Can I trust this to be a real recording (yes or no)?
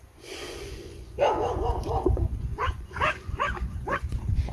no